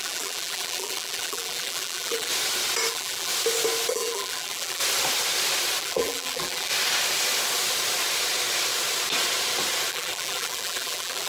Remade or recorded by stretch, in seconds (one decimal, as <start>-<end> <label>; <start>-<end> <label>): 0.0-2.3 remade; 2.3-2.9 recorded; 2.9-3.3 remade; 3.3-3.9 recorded; 3.9-4.8 remade; 4.8-5.8 recorded; 5.8-6.7 remade; 6.7-9.9 recorded; 9.9-11.3 remade